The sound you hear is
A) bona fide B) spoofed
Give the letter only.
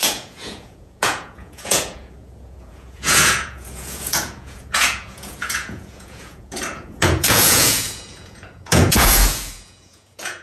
B